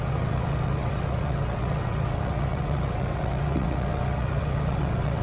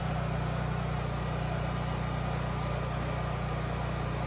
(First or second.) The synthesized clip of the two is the first